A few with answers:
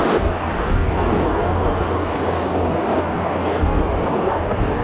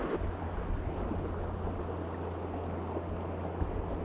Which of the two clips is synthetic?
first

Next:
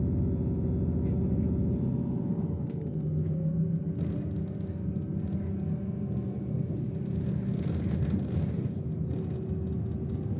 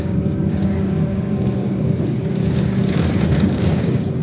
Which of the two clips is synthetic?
second